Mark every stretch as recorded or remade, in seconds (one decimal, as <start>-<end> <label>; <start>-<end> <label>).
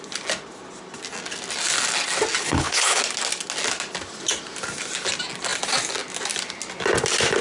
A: 0.0-2.4 recorded; 2.4-3.0 remade; 3.0-7.4 recorded